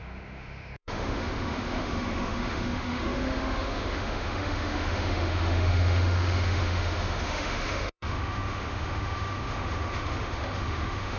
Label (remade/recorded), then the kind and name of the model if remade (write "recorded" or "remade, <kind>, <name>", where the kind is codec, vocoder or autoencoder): remade, autoencoder, DAC-VAE